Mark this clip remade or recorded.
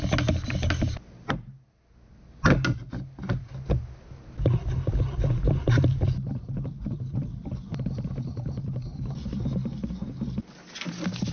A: recorded